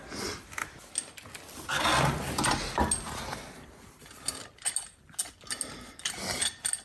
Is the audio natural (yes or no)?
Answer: yes